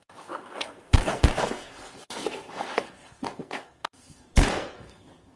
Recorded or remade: remade